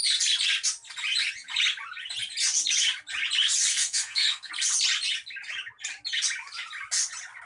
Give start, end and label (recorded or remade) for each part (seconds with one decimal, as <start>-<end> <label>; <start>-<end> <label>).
0.0-3.7 recorded; 3.7-4.5 remade; 4.5-7.5 recorded